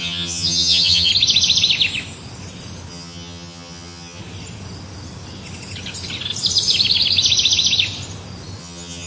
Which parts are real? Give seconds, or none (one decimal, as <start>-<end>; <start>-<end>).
1.1-2.9; 4.2-8.6